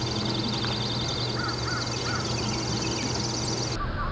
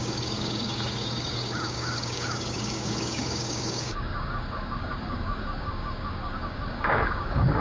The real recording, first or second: first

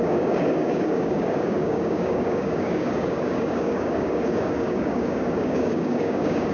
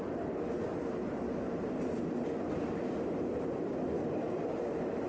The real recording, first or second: second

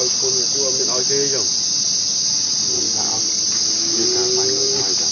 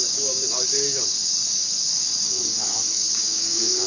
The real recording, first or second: first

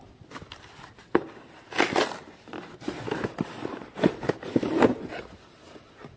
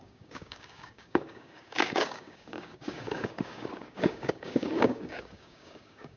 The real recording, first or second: first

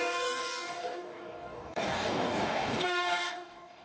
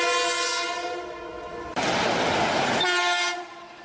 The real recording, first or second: second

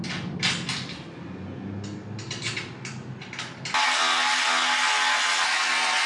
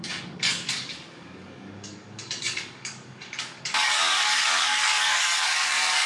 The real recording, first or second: first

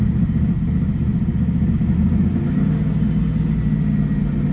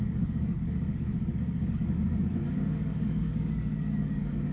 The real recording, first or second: first